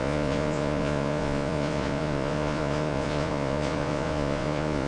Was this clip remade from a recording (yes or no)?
yes